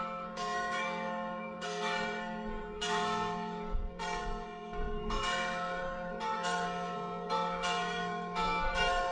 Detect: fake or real fake